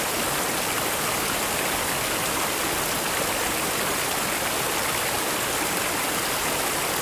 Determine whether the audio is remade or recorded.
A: recorded